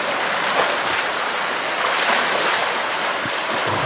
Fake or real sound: fake